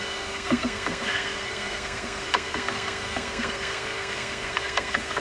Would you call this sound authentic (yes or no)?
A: no